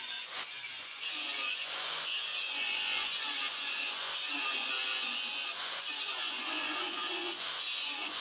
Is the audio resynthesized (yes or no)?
yes